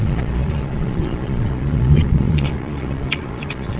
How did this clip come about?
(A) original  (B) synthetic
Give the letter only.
B